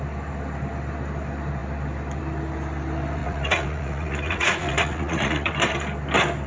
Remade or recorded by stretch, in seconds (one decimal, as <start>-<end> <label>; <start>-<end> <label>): 0.0-3.2 recorded; 3.2-5.5 remade; 5.5-6.5 recorded